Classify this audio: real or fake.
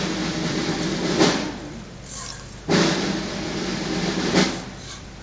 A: fake